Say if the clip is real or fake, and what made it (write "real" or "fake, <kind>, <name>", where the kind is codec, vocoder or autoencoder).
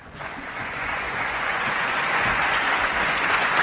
fake, vocoder, Vocos